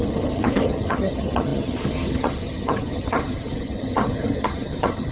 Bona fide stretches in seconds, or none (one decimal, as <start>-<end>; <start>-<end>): none